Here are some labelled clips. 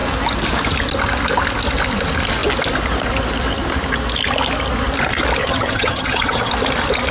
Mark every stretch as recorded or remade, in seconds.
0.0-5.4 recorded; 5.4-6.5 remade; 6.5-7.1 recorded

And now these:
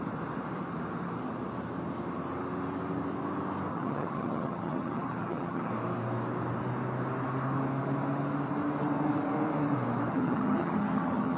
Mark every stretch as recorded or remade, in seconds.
0.0-3.7 recorded; 3.7-5.7 remade; 5.7-10.1 recorded; 10.1-11.4 remade

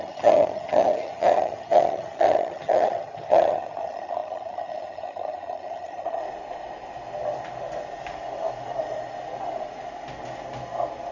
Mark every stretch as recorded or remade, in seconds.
0.0-6.2 remade; 6.2-11.1 recorded

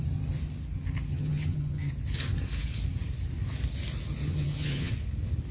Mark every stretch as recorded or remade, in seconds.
0.0-1.1 recorded; 1.1-1.9 remade; 1.9-4.2 recorded; 4.2-4.9 remade; 4.9-5.5 recorded